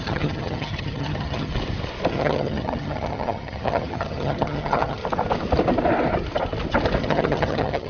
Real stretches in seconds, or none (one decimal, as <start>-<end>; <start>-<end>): 1.5-2.1; 5.0-7.0